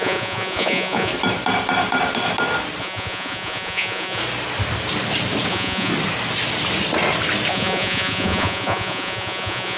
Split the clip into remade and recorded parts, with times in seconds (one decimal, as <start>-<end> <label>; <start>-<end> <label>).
0.0-1.1 remade; 1.1-2.8 recorded; 2.8-4.2 remade; 4.2-5.5 recorded; 5.5-5.9 remade; 5.9-7.5 recorded; 7.5-9.8 remade